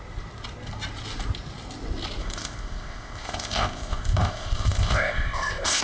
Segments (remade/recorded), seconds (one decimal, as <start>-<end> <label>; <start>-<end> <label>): 0.0-2.2 recorded; 2.2-5.8 remade